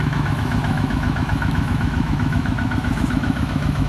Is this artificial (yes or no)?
yes